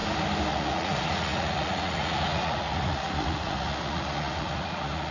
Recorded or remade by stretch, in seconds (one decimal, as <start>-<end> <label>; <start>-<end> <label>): 0.0-0.5 recorded; 0.5-5.1 remade